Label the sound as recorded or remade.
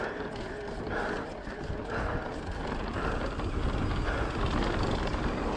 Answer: recorded